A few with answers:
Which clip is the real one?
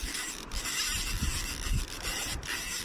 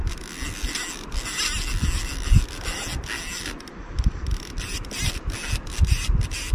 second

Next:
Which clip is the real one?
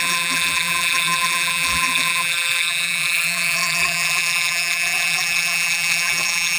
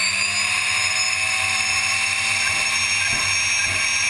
second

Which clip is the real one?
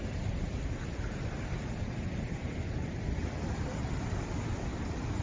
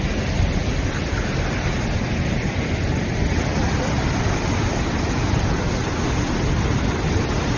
second